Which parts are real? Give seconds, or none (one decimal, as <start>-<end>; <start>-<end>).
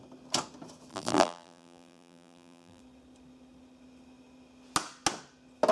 0.0-0.9; 2.8-5.7